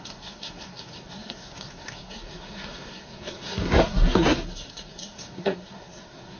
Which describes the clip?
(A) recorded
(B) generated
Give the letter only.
B